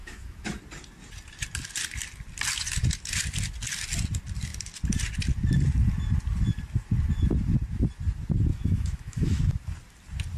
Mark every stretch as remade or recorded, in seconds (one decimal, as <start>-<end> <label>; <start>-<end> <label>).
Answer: 0.0-0.6 remade; 0.6-8.5 recorded; 8.5-9.4 remade; 9.4-10.4 recorded